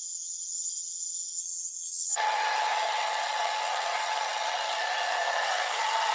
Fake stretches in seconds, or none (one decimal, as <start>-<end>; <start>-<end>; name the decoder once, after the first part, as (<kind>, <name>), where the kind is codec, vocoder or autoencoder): 0.0-6.1 (vocoder, HiFi-GAN)